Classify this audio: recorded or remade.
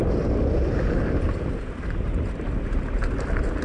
recorded